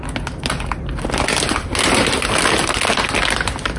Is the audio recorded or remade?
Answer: recorded